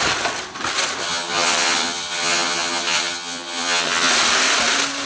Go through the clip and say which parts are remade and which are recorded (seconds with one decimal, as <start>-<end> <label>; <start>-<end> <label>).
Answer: 0.0-1.0 recorded; 1.0-4.1 remade; 4.1-5.1 recorded